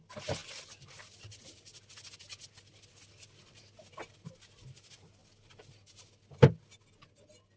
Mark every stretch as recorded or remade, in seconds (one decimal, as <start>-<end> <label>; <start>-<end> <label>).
0.0-7.6 recorded